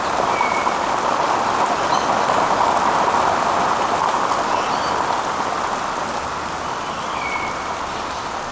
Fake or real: real